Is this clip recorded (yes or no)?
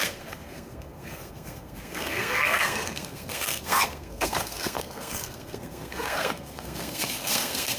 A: no